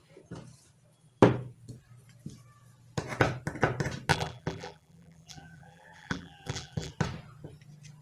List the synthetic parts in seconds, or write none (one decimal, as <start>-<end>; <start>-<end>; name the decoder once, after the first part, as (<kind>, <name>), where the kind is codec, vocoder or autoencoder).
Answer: 4.1-6.9 (vocoder, BigVGAN v2)